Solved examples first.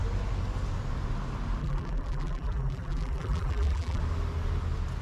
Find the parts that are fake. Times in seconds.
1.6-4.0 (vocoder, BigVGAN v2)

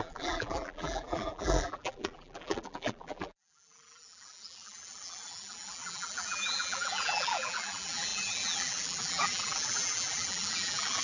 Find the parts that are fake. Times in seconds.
0.0-11.0 (vocoder, BigVGAN v2)